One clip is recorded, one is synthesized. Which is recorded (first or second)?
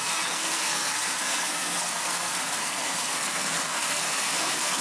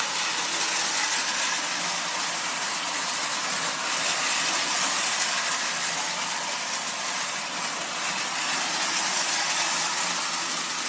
second